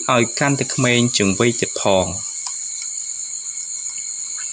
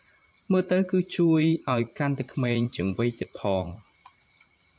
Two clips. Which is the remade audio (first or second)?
second